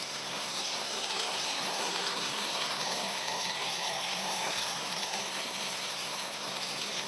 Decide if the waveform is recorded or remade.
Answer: remade